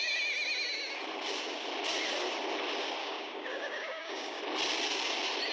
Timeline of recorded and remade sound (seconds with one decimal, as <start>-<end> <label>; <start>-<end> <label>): 0.0-3.0 recorded; 3.0-4.4 remade; 4.4-5.5 recorded